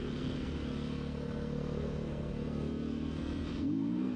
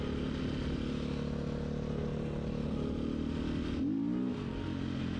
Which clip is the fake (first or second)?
first